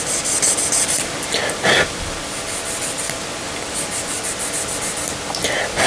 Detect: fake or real real